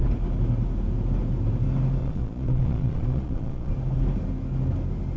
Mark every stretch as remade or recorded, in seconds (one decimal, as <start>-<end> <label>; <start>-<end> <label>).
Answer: 0.0-2.0 recorded; 2.0-3.7 remade; 3.7-5.2 recorded